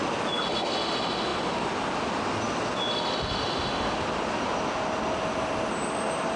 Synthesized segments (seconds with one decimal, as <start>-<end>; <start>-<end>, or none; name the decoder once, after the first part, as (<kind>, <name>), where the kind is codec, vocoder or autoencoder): none